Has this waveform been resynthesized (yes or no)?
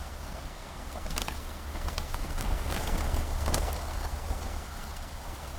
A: yes